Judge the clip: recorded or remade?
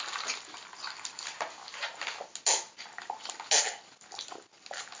recorded